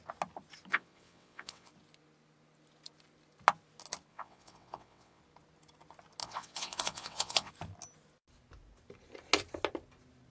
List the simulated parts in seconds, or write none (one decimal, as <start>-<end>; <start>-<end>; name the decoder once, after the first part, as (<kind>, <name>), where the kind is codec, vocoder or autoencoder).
0.7-1.7 (vocoder, WaveNeXt); 4.1-5.2; 6.2-7.5